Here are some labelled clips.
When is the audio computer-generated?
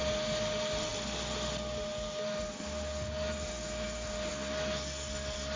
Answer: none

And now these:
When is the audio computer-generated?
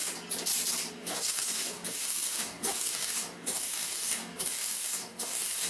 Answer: 0.9-5.7 (codec, DAC)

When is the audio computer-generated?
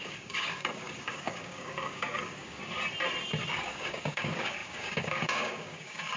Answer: 0.0-2.6 (codec, DAC); 3.5-6.2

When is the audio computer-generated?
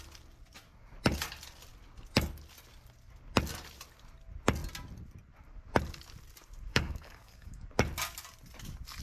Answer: 6.7-7.7 (codec, DAC)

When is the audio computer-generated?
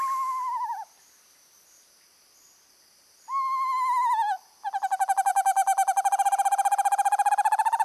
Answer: none